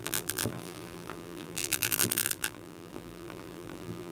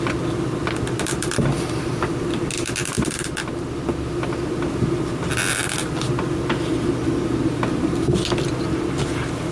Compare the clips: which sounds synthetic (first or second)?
first